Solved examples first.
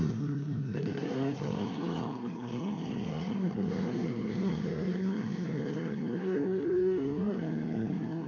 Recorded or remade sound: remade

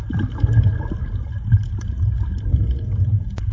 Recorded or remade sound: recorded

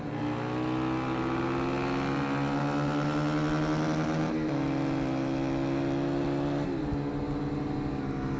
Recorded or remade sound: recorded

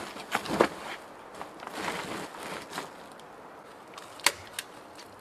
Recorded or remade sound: recorded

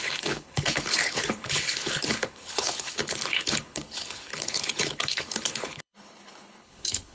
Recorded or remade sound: remade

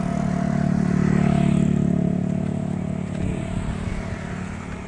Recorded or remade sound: recorded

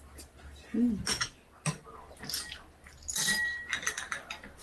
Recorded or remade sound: recorded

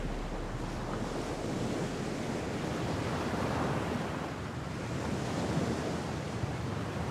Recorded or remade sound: recorded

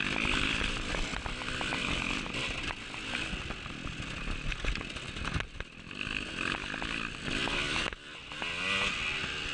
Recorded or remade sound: recorded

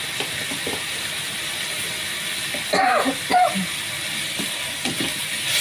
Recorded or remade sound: recorded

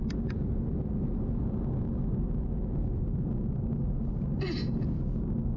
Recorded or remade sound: recorded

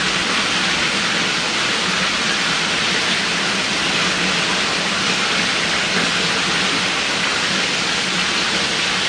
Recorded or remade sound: recorded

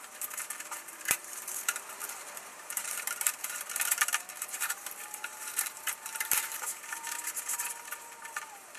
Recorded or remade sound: remade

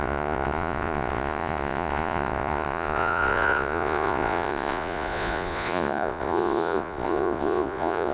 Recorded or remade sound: remade